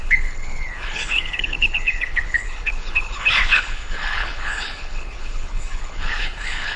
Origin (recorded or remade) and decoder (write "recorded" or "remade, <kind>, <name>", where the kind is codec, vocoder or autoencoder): remade, codec, HILCodec